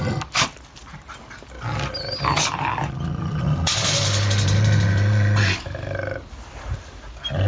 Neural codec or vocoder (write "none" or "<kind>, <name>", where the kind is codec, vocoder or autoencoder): none